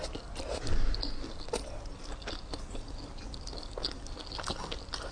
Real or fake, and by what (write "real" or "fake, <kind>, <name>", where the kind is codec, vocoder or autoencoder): real